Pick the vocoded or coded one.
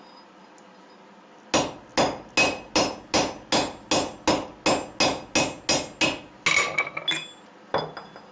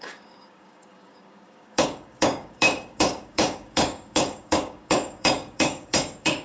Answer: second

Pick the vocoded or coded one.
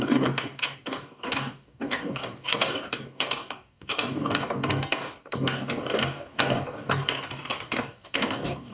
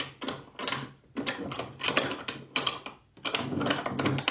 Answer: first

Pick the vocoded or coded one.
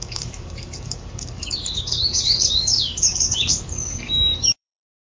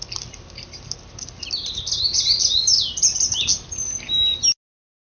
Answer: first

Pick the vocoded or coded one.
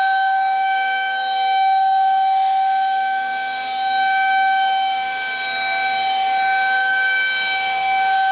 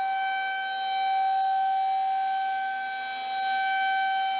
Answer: first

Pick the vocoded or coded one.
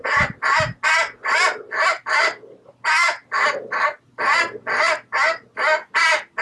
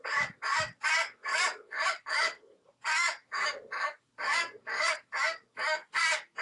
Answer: second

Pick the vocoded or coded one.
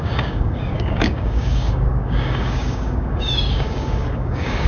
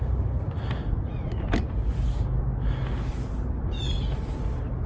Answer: first